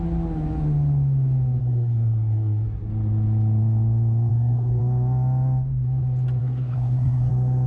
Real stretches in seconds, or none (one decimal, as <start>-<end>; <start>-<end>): 0.0-1.6; 2.9-4.3; 4.8-6.4; 7.3-7.7